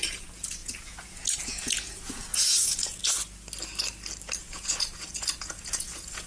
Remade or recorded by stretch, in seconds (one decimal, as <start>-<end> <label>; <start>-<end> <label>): 0.0-3.0 remade; 3.0-4.4 recorded; 4.4-6.3 remade